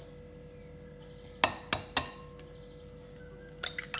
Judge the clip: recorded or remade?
recorded